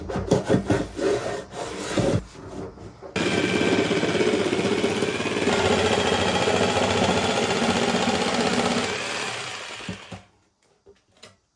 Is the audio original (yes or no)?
yes